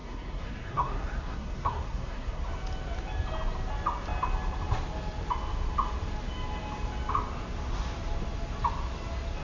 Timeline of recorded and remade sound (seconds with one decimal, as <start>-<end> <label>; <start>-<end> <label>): 0.0-2.4 remade; 2.4-9.4 recorded